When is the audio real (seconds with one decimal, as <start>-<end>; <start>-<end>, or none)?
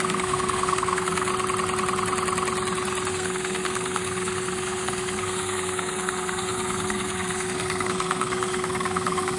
1.3-3.1